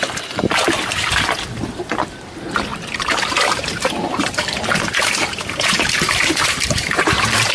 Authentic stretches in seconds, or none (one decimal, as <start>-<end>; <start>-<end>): 0.0-2.7